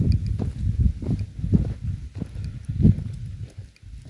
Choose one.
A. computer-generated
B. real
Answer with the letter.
B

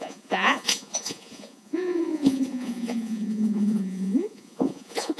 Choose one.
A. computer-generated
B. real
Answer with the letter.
A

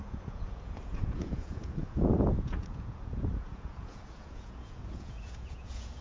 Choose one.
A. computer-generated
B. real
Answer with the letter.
A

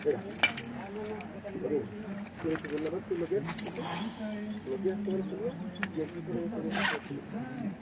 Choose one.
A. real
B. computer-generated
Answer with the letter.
A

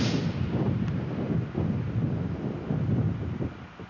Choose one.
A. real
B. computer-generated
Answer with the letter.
A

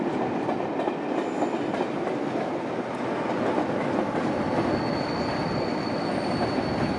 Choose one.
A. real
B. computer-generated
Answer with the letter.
A